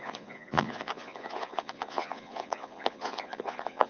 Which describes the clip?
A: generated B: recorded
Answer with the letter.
A